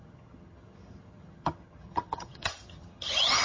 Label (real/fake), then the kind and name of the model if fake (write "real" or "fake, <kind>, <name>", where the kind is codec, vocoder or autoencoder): fake, vocoder, HiFi-GAN